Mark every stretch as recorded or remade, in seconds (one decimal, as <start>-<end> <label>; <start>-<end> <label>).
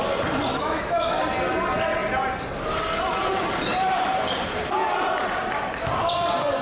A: 0.0-0.5 recorded; 0.5-1.2 remade; 1.2-6.6 recorded